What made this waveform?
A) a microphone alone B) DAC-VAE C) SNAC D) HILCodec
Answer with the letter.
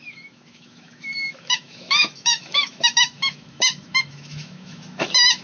B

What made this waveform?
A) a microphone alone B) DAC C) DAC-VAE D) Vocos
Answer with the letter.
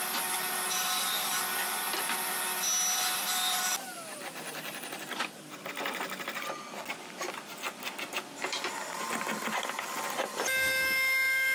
A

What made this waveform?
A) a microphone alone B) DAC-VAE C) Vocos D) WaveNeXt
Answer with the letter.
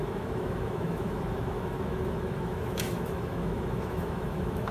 B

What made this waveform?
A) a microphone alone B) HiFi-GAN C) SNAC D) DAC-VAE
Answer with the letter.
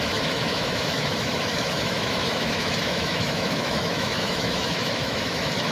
D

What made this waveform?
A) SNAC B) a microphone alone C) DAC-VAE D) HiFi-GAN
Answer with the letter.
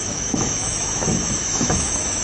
C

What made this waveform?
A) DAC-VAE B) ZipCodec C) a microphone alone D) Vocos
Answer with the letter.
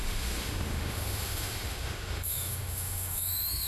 A